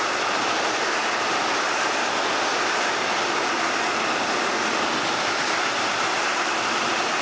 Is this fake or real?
real